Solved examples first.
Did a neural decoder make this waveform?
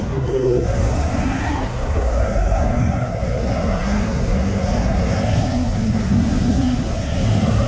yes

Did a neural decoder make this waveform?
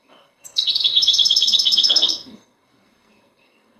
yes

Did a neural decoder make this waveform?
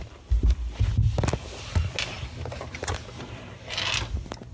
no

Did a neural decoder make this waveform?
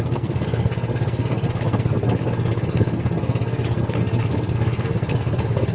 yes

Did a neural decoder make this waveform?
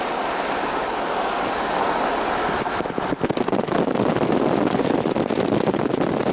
no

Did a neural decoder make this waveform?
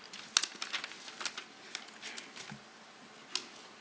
no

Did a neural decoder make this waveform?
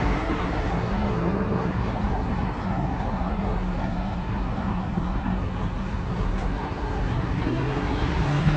yes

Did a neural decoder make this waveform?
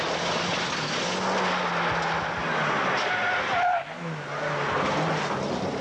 no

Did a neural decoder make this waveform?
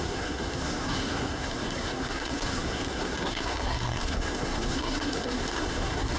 yes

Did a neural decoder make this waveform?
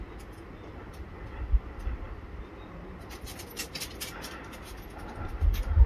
no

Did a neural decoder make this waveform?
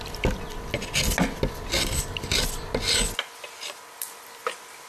no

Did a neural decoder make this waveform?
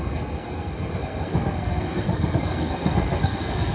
yes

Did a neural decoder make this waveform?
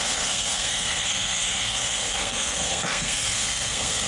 yes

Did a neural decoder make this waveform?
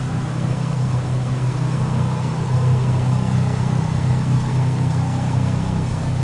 yes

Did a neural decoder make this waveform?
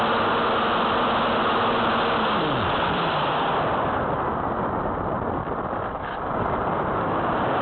no